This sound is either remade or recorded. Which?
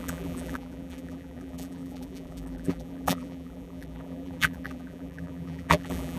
remade